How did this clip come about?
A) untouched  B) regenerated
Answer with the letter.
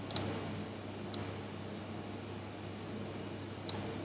A